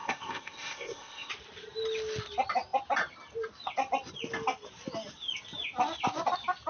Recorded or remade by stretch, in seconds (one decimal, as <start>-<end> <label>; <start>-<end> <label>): 0.0-1.3 remade; 1.3-6.7 recorded